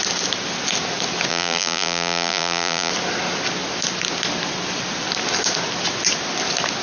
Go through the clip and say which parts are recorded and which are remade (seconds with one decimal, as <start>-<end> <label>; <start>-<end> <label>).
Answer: 0.0-1.3 recorded; 1.3-2.9 remade; 2.9-6.8 recorded